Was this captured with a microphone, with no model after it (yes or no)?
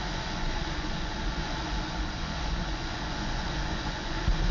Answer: no